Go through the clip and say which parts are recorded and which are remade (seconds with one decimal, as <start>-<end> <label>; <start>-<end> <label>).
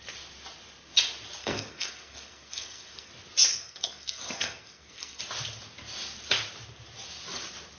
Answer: 0.0-1.4 recorded; 1.4-3.1 remade; 3.1-3.5 recorded; 3.5-5.2 remade; 5.2-7.8 recorded